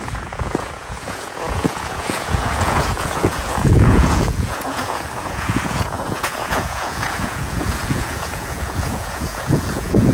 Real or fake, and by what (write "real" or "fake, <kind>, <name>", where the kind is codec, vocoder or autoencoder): fake, vocoder, Vocos